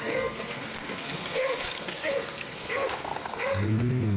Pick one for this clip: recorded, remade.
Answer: remade